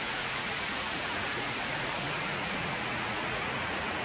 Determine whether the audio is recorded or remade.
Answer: remade